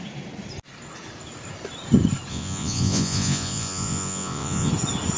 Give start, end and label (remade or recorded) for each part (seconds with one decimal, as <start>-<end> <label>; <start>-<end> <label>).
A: 0.0-2.3 recorded; 2.3-4.7 remade; 4.7-5.2 recorded